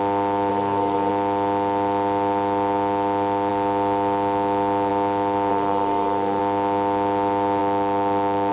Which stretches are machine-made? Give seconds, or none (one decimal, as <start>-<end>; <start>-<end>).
0.5-1.1; 5.5-6.4